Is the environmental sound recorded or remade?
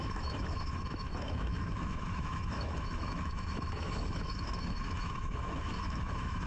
remade